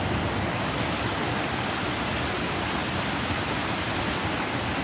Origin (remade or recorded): recorded